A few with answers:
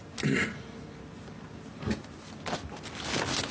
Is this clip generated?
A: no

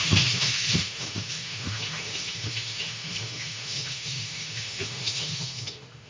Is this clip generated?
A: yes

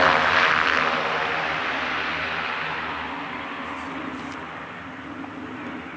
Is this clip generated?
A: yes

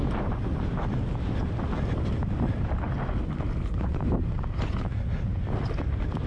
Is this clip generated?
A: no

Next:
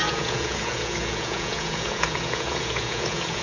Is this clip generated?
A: yes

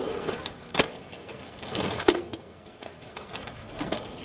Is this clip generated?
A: yes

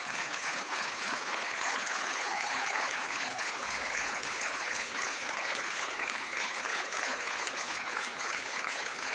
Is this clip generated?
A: yes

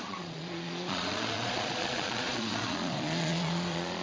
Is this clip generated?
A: yes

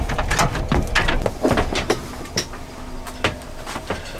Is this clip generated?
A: no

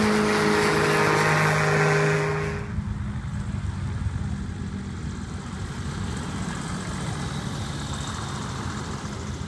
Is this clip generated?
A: no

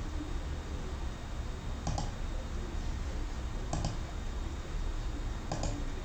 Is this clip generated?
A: no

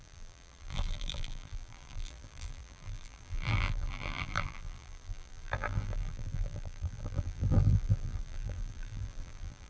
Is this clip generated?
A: yes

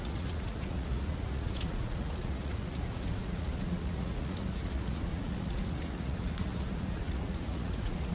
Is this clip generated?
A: yes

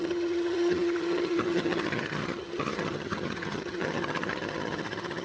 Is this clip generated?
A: yes